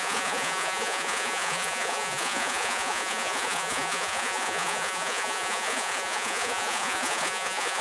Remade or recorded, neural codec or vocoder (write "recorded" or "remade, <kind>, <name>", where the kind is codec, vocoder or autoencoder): remade, vocoder, Vocos